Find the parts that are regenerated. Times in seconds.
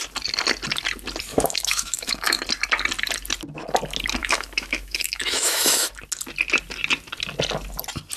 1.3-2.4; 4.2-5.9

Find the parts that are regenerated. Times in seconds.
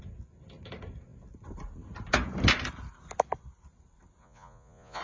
4.2-5.0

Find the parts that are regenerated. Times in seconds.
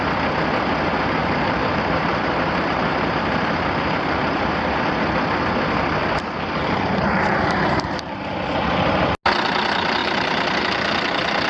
1.2-5.0; 6.0-9.0; 10.0-10.6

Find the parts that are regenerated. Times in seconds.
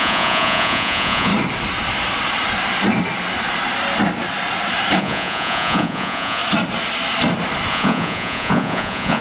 0.0-1.3; 5.0-6.4; 7.7-9.2